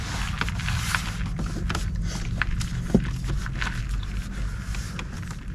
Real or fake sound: real